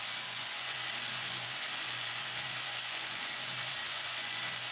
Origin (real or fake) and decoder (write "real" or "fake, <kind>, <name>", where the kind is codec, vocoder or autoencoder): fake, vocoder, Vocos